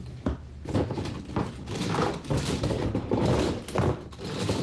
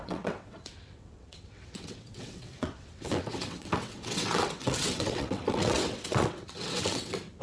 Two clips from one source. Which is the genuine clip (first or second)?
first